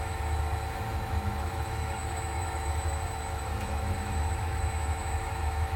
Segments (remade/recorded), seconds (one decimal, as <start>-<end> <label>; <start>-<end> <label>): 0.0-5.8 remade